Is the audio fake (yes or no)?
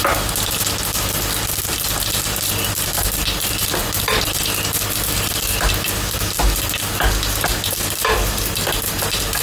no